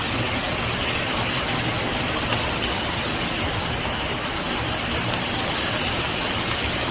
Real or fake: real